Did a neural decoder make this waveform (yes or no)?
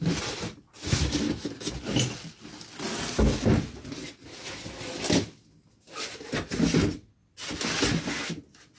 no